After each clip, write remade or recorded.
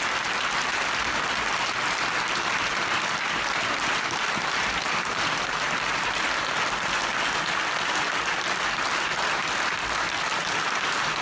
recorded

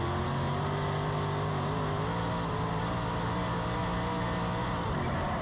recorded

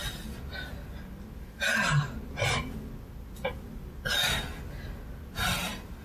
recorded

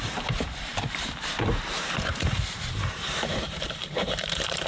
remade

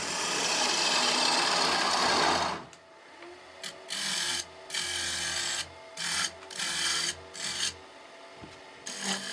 recorded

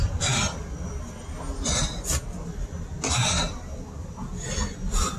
recorded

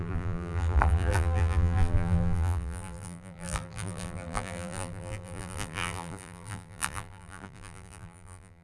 remade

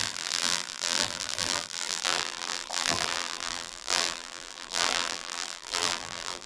remade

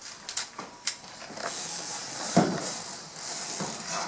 recorded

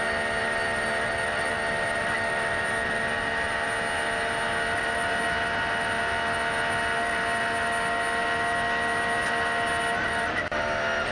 recorded